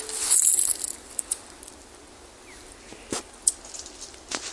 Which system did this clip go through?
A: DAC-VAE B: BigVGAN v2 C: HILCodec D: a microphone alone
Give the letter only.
D